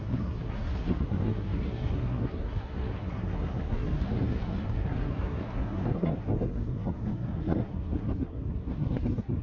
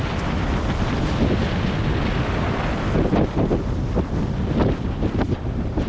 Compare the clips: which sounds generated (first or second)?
first